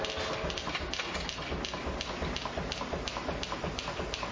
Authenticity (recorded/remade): recorded